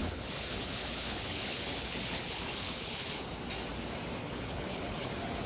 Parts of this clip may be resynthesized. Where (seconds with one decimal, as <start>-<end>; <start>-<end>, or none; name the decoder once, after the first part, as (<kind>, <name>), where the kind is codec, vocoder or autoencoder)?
0.0-3.3 (codec, HILCodec); 4.2-5.1